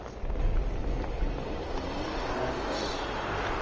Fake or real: real